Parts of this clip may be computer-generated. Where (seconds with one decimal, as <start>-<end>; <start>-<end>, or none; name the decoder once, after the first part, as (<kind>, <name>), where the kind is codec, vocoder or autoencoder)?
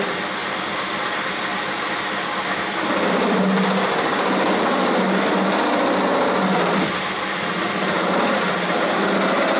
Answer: none